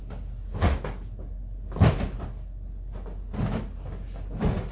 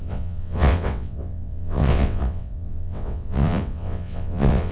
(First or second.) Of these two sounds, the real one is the first